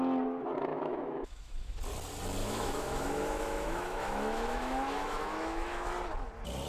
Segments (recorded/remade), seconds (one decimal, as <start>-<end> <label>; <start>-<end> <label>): 0.0-0.7 recorded; 0.7-1.8 remade; 1.8-2.4 recorded; 2.4-5.9 remade; 5.9-6.7 recorded